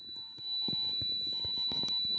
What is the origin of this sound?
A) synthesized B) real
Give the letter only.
A